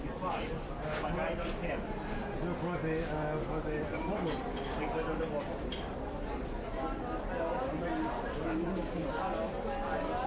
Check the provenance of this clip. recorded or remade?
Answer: recorded